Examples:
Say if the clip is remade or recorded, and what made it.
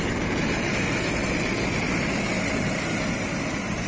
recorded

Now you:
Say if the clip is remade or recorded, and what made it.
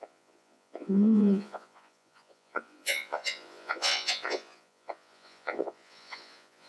remade, vocoder, Vocos